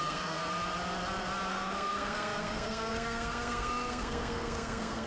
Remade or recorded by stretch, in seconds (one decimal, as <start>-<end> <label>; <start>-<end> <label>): 0.0-0.4 remade; 0.4-1.5 recorded; 1.5-5.1 remade